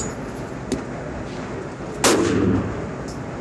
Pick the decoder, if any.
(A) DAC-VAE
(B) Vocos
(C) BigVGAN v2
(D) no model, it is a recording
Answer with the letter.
D